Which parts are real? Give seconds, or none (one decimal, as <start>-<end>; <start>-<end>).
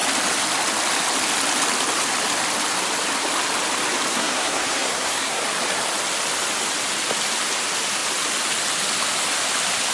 0.0-4.1; 5.4-9.9